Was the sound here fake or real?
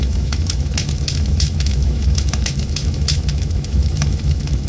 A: fake